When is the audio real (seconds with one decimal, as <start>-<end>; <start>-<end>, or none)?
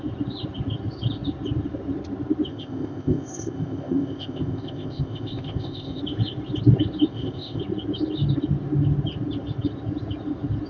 0.0-2.5; 6.0-7.1; 7.6-10.7